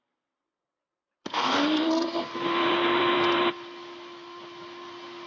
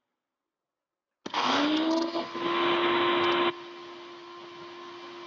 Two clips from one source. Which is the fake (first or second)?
first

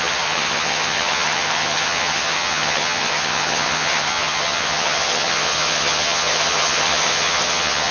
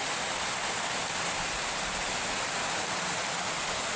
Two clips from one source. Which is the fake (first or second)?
first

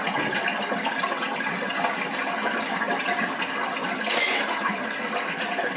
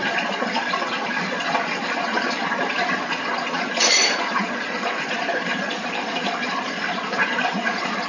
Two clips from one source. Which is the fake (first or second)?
second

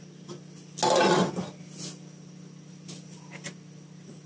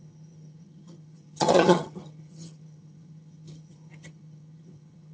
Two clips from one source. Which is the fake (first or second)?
second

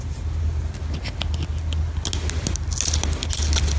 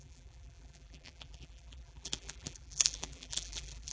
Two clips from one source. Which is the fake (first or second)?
second